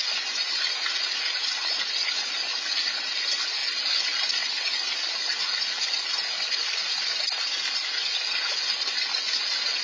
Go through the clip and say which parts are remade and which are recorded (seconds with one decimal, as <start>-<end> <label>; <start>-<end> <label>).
0.0-9.8 recorded

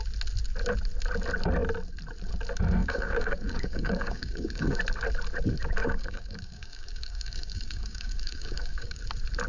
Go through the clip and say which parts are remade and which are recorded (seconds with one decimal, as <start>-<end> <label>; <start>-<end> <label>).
0.0-2.8 recorded; 2.8-4.8 remade; 4.8-5.8 recorded; 5.8-9.0 remade; 9.0-9.5 recorded

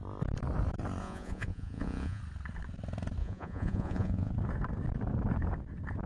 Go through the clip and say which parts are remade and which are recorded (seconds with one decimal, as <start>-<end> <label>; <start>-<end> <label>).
0.0-1.0 recorded; 1.0-2.2 remade; 2.2-3.2 recorded; 3.2-4.3 remade; 4.3-6.1 recorded

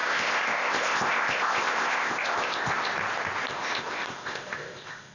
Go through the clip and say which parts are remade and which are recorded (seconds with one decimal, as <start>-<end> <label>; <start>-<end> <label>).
0.0-2.9 remade; 2.9-3.5 recorded; 3.5-5.1 remade

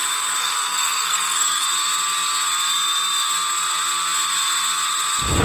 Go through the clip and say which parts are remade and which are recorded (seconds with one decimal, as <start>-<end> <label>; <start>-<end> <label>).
0.0-0.4 recorded; 0.4-1.6 remade; 1.6-5.4 recorded